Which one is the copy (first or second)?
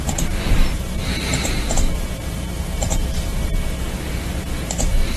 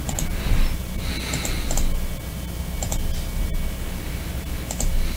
first